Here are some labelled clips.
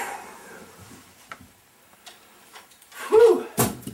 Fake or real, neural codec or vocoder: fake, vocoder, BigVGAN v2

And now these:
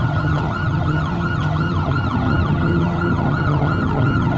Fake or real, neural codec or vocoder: fake, vocoder, HiFi-GAN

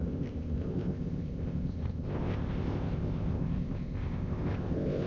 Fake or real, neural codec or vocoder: fake, codec, ZipCodec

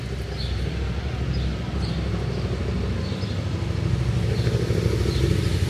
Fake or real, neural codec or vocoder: real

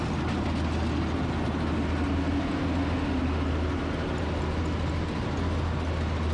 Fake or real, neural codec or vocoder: real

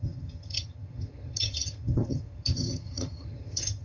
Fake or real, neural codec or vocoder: fake, vocoder, HiFi-GAN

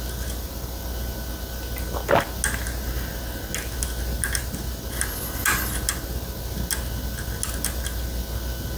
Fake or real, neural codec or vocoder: real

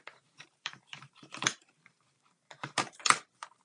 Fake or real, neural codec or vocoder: fake, vocoder, BigVGAN v2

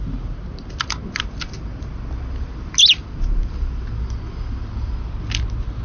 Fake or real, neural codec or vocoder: real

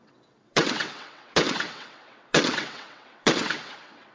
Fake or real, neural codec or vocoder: fake, vocoder, WaveNeXt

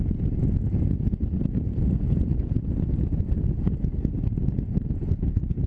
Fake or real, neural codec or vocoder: real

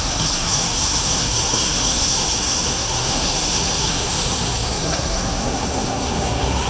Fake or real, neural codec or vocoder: fake, codec, SNAC